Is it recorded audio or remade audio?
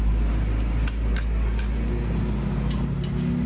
recorded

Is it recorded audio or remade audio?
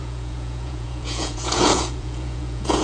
remade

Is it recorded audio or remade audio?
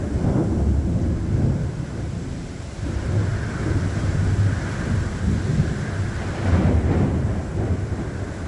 recorded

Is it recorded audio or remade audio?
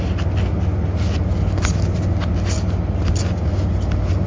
recorded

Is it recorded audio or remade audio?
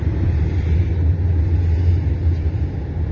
recorded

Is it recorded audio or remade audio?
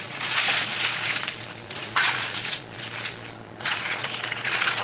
remade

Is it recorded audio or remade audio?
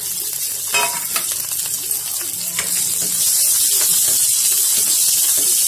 recorded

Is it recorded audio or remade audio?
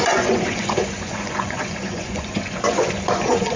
remade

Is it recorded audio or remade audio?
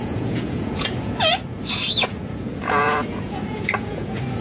remade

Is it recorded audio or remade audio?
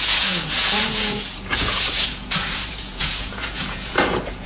remade